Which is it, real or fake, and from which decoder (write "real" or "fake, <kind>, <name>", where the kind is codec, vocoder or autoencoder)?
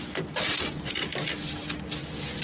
real